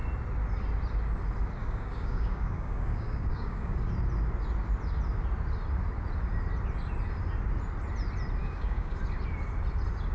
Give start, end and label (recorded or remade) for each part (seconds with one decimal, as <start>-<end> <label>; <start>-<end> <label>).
0.0-1.6 recorded; 1.6-3.9 remade; 3.9-8.4 recorded; 8.4-9.0 remade; 9.0-10.1 recorded